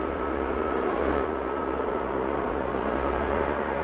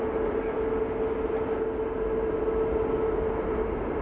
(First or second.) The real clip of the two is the second